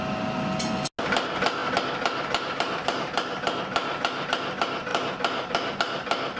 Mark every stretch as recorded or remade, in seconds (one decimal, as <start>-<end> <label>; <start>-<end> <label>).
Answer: 0.0-6.4 recorded